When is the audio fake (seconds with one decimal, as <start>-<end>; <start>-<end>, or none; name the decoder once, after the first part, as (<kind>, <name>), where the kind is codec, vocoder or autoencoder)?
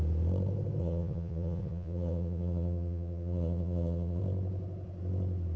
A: 0.8-4.2 (vocoder, Vocos)